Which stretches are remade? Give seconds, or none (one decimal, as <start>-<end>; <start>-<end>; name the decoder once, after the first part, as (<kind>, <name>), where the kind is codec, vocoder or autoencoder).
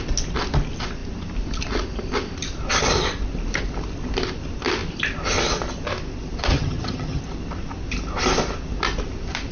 6.5-7.2 (vocoder, HiFi-GAN)